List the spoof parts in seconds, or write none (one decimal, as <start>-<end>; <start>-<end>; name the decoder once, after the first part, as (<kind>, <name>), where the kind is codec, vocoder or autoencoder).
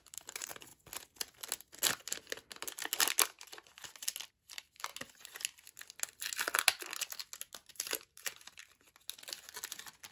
0.0-0.7 (vocoder, BigVGAN v2); 4.3-4.9; 7.5-8.6